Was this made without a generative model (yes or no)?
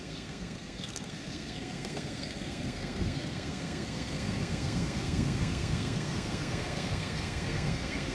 no